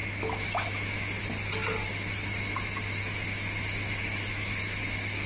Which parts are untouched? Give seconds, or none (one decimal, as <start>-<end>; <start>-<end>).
1.2-1.8